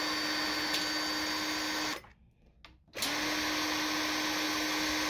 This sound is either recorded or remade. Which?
recorded